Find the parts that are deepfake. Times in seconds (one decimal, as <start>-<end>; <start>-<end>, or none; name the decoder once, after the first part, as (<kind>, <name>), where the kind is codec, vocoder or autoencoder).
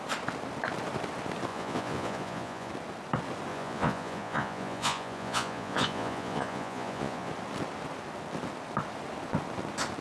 1.5-2.7 (vocoder, Vocos); 3.5-7.3